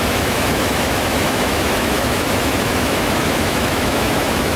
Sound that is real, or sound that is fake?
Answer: fake